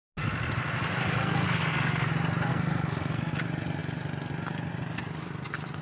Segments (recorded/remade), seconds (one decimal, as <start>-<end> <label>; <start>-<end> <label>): 0.0-1.2 recorded; 1.2-2.1 remade; 2.1-2.5 recorded; 2.5-3.3 remade; 3.3-5.8 recorded